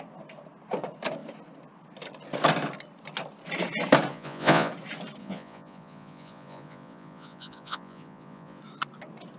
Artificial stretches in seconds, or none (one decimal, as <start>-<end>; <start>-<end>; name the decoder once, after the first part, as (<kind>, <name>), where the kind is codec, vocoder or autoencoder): 4.1-4.7 (vocoder, Vocos); 5.2-8.6